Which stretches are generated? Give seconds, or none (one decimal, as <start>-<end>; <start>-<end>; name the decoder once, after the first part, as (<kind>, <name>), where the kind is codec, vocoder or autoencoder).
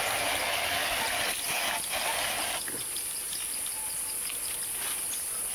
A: 3.2-3.9 (vocoder, BigVGAN v2)